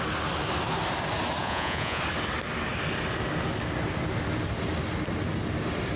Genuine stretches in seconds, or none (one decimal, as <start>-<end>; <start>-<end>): 0.0-1.4; 2.0-6.0